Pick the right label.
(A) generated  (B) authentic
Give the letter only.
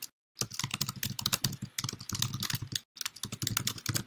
B